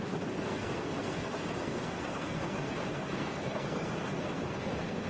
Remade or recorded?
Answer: remade